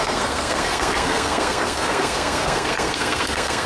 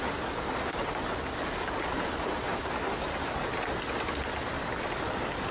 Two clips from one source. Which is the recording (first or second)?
second